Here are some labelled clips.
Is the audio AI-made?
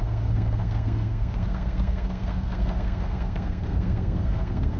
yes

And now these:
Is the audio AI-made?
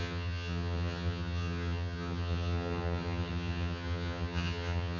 yes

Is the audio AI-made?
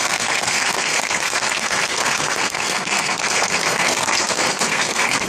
yes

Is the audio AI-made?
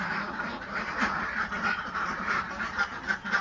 no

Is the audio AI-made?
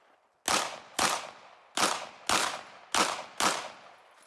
no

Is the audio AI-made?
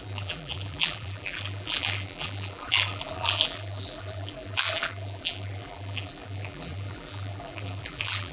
yes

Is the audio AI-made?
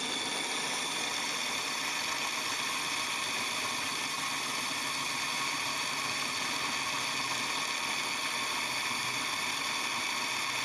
no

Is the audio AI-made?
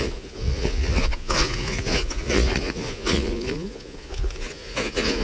yes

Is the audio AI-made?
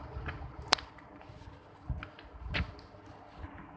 no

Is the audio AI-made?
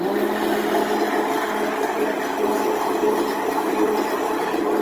no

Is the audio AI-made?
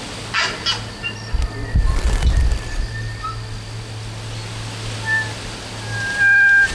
no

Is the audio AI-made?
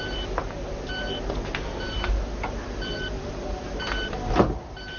no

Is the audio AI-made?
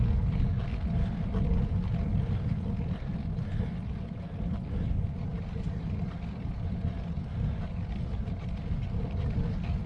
no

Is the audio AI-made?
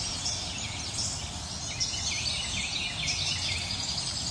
no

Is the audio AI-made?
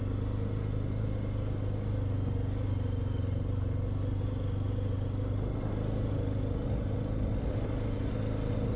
no